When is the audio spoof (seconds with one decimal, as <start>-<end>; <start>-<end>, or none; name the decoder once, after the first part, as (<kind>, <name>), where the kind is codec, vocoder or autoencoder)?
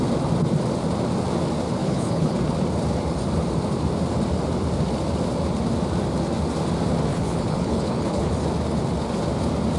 1.8-2.4 (codec, HILCodec); 7.1-8.3